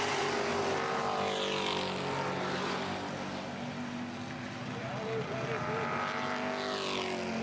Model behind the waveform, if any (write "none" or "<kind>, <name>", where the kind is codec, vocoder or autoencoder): none